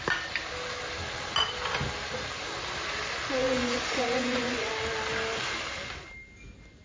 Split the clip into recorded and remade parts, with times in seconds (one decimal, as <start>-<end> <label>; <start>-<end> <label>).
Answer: 0.0-3.4 recorded; 3.4-4.7 remade; 4.7-6.8 recorded